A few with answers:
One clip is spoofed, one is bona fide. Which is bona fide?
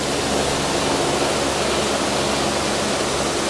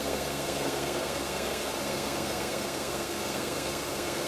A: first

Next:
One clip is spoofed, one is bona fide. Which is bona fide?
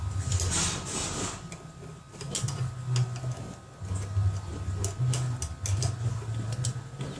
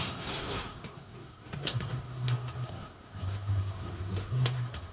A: first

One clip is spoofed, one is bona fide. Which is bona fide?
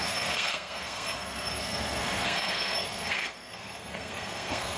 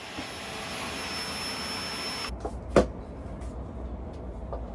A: second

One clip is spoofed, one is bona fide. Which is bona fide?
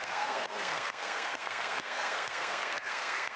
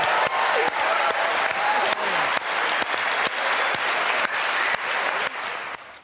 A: second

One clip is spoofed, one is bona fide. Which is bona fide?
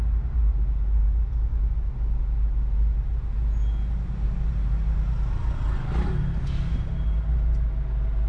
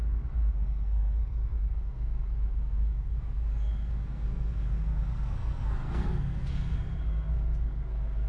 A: first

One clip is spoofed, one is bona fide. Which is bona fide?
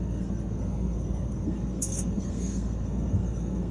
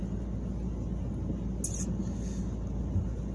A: second